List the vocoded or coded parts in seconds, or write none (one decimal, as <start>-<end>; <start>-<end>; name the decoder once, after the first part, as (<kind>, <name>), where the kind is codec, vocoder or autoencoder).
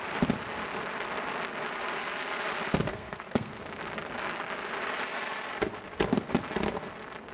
2.9-3.5 (codec, SNAC)